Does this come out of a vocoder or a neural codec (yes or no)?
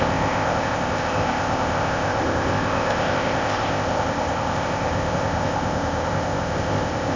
yes